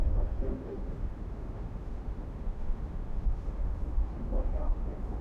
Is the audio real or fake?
fake